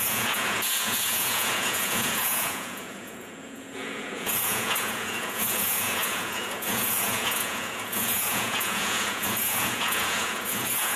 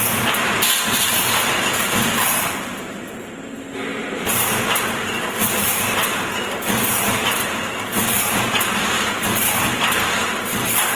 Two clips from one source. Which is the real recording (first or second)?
second